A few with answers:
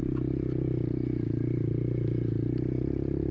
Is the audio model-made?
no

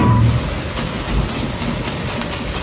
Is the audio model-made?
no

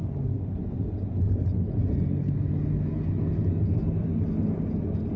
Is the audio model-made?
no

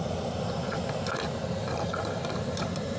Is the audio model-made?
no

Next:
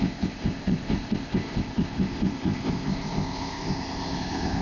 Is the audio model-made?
yes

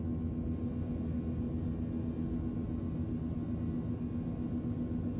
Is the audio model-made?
no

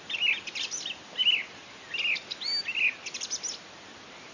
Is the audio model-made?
no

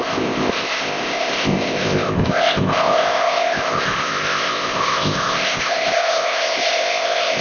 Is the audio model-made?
yes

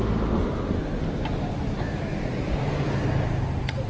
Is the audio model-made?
no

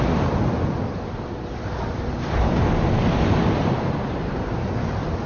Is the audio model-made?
no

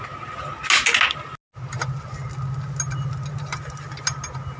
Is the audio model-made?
no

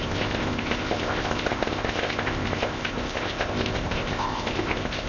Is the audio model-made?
yes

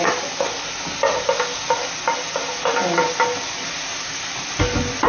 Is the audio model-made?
no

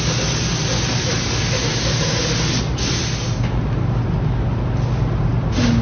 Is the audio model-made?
no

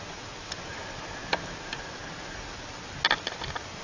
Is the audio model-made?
no